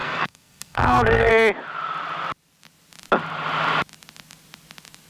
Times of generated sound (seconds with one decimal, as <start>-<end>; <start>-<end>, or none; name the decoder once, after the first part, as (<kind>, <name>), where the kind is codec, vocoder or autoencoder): 0.0-1.3 (codec, SNAC)